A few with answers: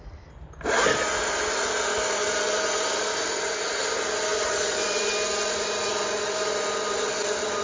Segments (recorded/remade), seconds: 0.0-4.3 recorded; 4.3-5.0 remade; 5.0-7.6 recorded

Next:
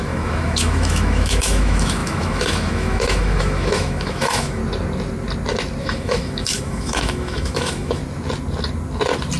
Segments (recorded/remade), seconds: 0.0-4.6 remade; 4.6-5.8 recorded; 5.8-8.0 remade; 8.0-9.4 recorded